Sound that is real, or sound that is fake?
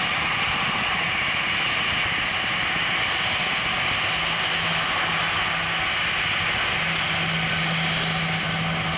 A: real